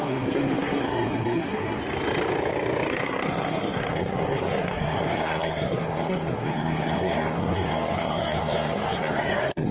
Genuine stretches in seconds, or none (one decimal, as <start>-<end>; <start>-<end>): 1.8-2.9